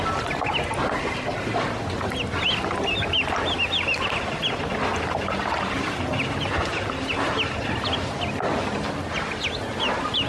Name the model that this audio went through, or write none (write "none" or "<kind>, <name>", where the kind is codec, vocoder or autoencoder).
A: none